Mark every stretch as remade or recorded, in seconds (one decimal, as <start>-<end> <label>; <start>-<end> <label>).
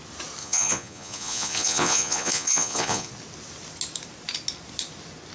0.0-0.4 recorded; 0.4-3.1 remade; 3.1-5.3 recorded